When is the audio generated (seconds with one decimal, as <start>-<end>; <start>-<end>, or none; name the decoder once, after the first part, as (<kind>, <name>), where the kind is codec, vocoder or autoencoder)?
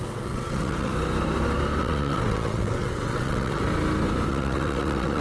0.0-0.9 (vocoder, WaveNeXt); 1.8-3.6; 4.3-5.2